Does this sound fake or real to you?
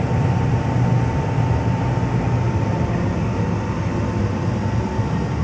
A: real